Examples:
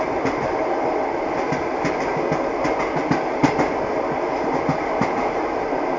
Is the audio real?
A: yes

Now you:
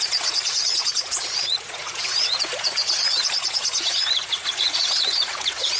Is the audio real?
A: no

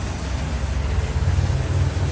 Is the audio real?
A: yes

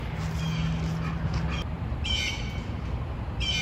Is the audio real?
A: yes